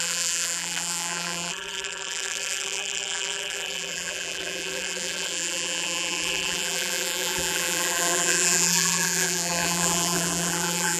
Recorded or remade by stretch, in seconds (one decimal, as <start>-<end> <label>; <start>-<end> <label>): 0.0-11.0 remade